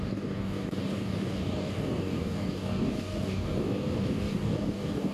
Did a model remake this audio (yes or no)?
yes